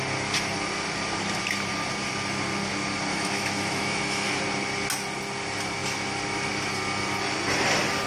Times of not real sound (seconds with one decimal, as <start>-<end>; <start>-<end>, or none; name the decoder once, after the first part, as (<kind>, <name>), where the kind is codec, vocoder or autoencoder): 3.1-4.4 (autoencoder, DAC-VAE)